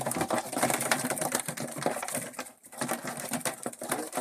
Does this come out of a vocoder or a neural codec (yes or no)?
no